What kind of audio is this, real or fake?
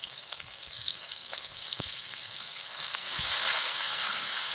fake